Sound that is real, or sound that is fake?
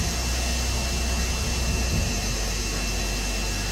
real